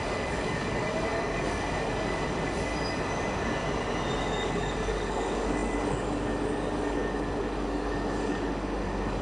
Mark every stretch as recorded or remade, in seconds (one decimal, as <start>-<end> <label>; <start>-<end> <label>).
0.0-2.7 remade; 2.7-4.2 recorded; 4.2-9.2 remade